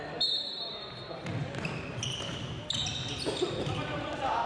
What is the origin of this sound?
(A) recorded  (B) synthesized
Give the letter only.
A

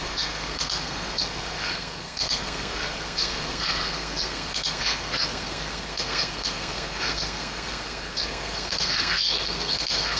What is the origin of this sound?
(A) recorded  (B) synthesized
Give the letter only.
B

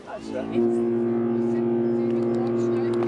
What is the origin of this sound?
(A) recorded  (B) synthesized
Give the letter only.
A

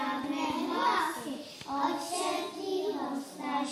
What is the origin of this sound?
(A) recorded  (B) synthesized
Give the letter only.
A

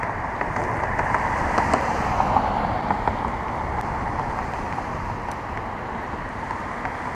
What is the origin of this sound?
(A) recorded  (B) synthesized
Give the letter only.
A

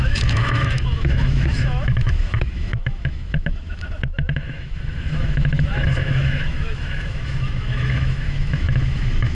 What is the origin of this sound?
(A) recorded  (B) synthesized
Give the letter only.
B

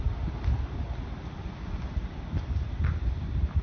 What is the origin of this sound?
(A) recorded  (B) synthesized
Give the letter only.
B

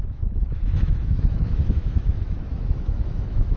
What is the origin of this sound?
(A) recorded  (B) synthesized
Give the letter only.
B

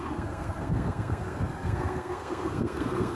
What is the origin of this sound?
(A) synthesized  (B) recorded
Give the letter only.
A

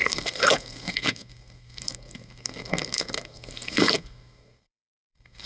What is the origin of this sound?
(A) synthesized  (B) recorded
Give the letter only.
A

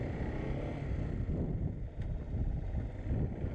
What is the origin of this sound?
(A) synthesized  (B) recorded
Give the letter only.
B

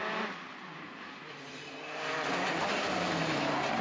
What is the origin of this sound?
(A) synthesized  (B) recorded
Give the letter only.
B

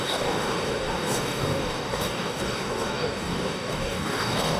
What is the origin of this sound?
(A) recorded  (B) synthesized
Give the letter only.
B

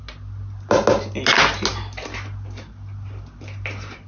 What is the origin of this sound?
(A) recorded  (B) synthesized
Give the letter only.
A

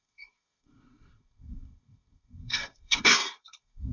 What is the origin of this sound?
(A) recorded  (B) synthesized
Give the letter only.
B